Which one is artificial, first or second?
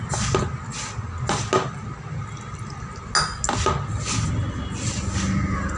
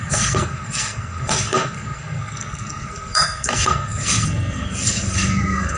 second